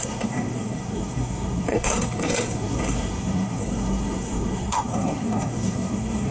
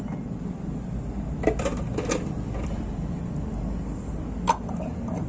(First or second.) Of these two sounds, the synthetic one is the first